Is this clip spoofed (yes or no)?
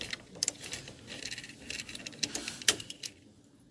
no